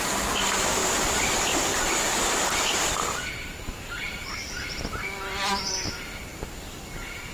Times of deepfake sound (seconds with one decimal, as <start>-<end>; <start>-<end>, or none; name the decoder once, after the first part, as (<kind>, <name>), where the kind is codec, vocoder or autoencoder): 0.8-4.8 (vocoder, BigVGAN v2)

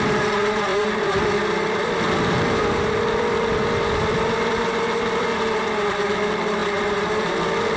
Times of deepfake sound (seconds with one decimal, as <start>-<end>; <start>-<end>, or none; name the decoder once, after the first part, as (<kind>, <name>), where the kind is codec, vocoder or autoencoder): 0.7-5.4 (vocoder, BigVGAN v2); 6.6-7.2

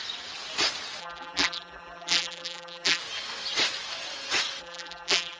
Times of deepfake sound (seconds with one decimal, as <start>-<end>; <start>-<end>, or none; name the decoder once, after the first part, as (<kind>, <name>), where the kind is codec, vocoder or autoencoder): 1.0-3.0 (vocoder, BigVGAN v2); 4.6-5.4

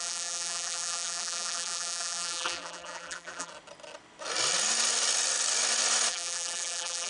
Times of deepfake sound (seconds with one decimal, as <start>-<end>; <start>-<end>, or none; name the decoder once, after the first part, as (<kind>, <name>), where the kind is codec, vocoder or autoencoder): 0.0-3.5 (vocoder, BigVGAN v2); 6.1-7.1